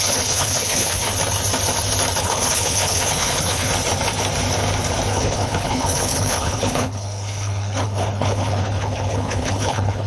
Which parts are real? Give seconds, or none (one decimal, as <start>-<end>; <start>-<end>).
1.1-2.2; 3.7-5.1